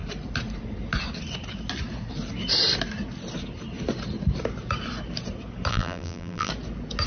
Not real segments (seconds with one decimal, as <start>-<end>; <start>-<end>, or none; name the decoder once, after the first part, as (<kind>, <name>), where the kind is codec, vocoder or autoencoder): 5.7-6.5 (vocoder, BigVGAN v2)